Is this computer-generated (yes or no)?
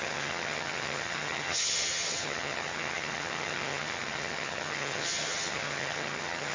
yes